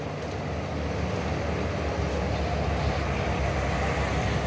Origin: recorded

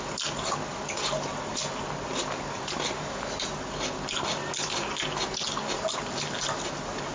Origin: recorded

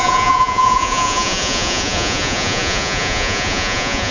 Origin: remade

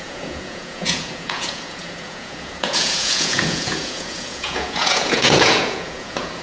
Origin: remade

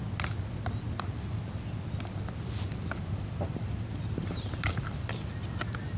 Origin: recorded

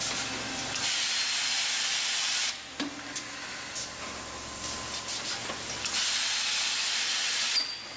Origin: recorded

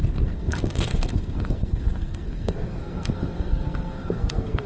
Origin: remade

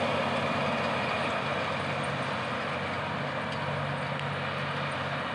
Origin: recorded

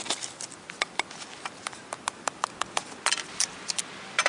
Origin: recorded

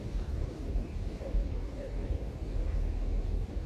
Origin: remade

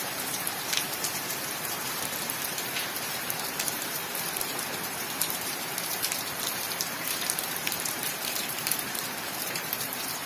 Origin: remade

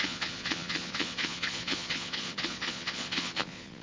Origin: remade